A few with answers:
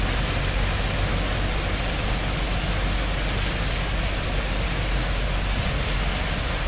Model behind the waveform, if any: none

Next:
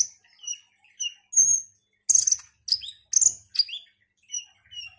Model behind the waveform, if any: none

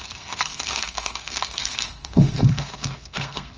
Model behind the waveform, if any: codec, SNAC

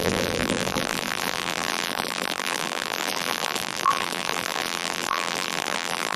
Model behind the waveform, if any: vocoder, BigVGAN v2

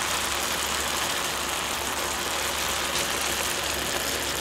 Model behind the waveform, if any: none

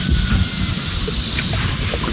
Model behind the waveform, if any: none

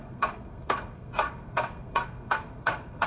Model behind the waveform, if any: codec, SNAC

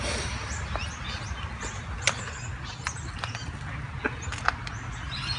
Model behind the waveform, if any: none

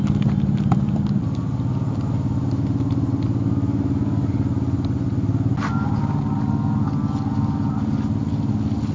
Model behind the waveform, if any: none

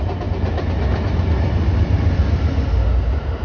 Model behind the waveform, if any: none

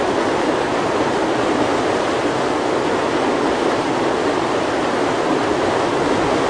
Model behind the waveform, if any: none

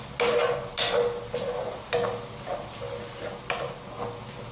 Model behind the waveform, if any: none